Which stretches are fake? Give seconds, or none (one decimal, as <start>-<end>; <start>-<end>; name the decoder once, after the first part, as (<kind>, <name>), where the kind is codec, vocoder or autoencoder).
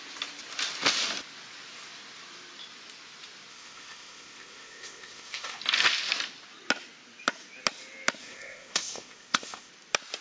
3.5-5.6 (codec, ZipCodec); 8.2-9.7